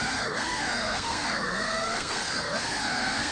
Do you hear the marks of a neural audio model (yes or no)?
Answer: yes